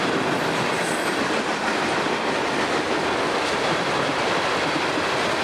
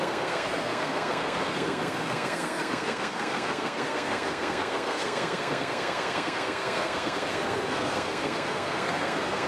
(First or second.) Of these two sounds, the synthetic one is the second